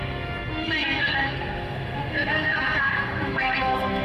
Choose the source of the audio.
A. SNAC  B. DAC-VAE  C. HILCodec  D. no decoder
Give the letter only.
A